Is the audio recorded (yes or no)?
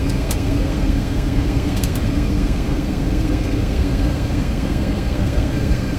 no